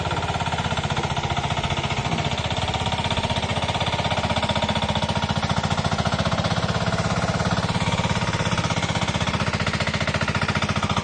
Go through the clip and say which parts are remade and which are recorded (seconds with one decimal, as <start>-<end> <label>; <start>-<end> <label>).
0.0-2.0 recorded; 2.0-2.6 remade; 2.6-11.0 recorded